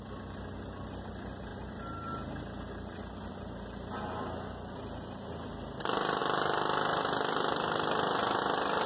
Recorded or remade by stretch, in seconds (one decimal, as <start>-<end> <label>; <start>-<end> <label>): 0.0-8.9 recorded